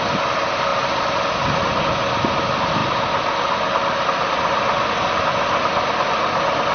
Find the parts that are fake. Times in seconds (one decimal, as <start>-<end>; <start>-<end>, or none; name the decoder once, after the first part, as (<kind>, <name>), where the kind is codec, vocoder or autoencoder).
none